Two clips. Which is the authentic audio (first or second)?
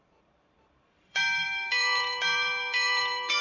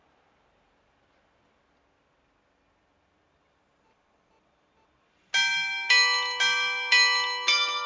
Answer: second